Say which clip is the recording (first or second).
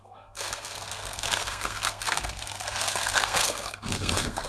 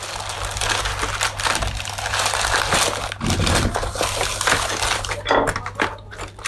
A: second